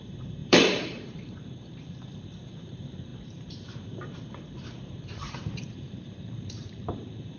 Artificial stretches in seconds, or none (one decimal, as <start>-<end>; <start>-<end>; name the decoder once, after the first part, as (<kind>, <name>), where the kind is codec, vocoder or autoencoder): 0.0-7.4 (vocoder, BigVGAN v2)

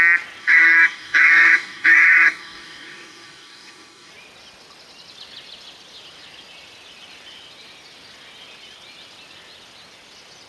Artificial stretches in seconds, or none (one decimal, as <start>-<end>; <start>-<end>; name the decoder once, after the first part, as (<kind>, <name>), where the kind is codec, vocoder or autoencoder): 0.4-4.1 (codec, DAC)

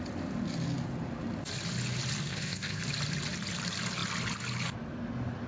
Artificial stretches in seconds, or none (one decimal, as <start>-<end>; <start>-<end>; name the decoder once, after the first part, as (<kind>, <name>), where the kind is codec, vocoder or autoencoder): 2.3-2.8 (codec, ZipCodec)